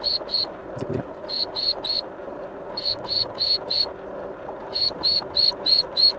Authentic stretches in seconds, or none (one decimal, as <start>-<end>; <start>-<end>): 0.0-6.2